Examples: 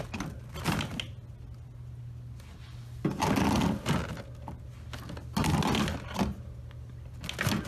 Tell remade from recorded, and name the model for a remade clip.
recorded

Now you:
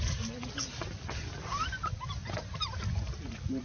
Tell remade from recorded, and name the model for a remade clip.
recorded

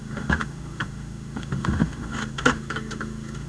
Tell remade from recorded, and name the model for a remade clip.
remade, autoencoder, DAC-VAE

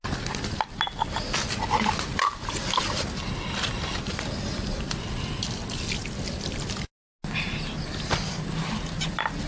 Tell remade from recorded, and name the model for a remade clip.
recorded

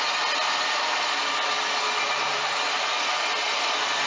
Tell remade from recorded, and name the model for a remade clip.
recorded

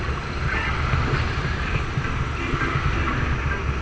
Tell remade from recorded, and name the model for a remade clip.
recorded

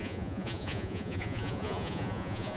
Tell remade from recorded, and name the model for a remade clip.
remade, vocoder, Vocos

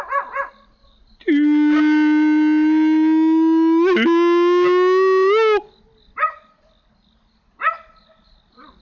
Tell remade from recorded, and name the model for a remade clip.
recorded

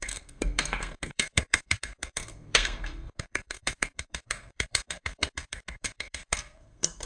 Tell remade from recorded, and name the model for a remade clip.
remade, codec, SNAC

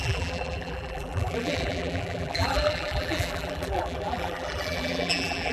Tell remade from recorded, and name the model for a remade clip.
remade, vocoder, BigVGAN v2